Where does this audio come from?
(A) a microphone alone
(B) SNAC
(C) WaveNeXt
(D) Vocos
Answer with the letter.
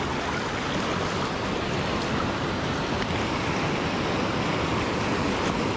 A